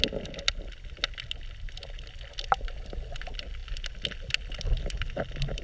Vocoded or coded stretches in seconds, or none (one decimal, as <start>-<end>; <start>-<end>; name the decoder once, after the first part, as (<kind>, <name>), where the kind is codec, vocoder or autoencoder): none